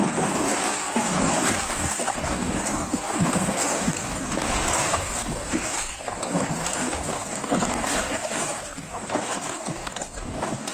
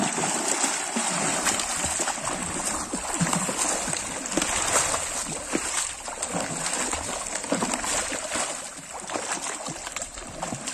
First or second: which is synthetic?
first